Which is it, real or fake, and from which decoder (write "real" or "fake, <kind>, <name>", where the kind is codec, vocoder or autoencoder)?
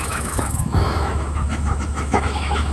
fake, autoencoder, DAC-VAE